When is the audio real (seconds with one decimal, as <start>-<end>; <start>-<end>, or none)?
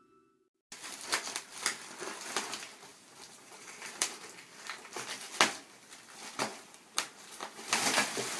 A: 0.0-2.9; 4.2-6.5; 7.8-8.4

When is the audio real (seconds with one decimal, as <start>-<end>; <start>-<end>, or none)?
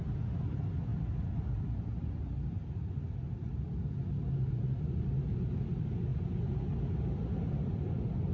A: 0.0-0.9; 2.2-8.3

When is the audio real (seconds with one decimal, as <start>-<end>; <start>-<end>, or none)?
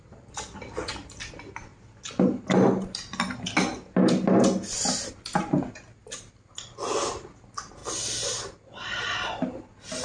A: 0.0-10.0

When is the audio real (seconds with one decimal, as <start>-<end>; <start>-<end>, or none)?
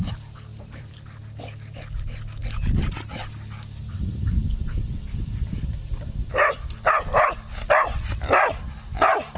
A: 0.0-0.5; 1.2-9.4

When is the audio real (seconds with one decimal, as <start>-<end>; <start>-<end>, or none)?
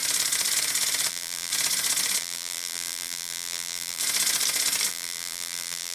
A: 0.0-1.1; 1.5-2.2; 4.0-4.9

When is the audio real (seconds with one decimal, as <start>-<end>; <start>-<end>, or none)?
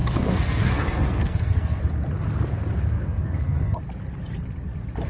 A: 1.8-2.9; 3.8-5.1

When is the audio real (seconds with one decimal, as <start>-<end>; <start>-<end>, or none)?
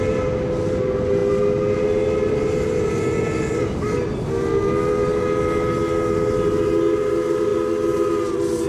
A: 0.0-8.7